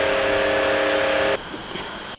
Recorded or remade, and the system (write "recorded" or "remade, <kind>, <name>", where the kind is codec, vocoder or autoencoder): recorded